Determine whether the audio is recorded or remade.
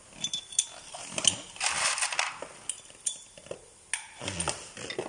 recorded